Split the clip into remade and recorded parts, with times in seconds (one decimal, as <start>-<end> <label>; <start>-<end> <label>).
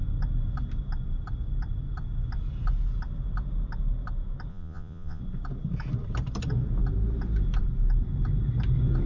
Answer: 0.0-4.5 recorded; 4.5-5.2 remade; 5.2-9.1 recorded